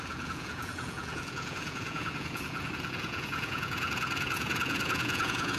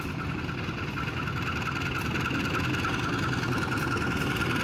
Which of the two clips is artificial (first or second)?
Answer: first